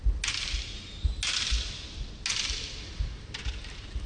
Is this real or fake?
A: real